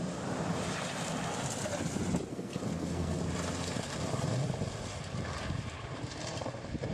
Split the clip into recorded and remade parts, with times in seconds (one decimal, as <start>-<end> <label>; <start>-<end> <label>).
0.0-2.3 recorded; 2.3-3.2 remade; 3.2-6.9 recorded